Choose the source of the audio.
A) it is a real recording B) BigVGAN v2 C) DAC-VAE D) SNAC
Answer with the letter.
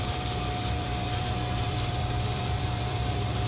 B